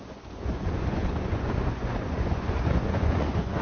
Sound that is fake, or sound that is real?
fake